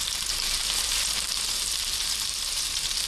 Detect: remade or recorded remade